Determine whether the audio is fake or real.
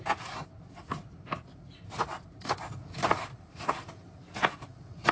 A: real